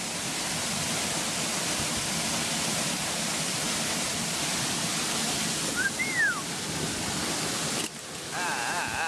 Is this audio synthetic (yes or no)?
yes